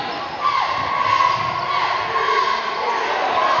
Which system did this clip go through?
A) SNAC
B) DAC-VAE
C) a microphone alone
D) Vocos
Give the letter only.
C